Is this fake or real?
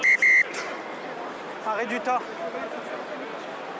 real